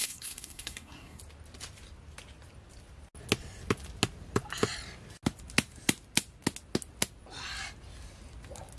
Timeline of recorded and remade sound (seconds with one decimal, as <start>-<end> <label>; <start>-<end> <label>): 0.0-1.2 remade; 1.2-8.8 recorded